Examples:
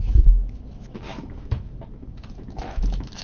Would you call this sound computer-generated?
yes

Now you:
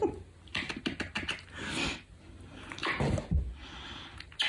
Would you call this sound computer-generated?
no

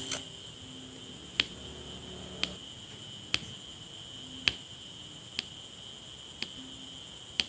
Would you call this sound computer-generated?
no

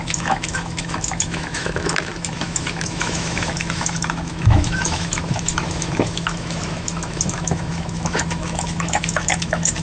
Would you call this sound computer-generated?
yes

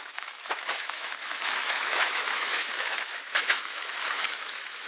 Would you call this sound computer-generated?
yes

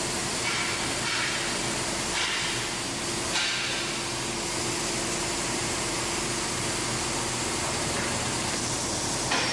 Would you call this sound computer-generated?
no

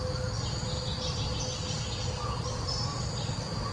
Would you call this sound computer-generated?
no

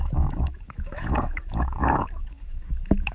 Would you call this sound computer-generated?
yes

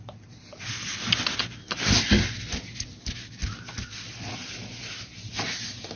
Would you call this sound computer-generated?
no